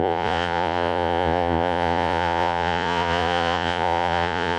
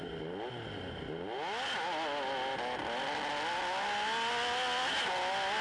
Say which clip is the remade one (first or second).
first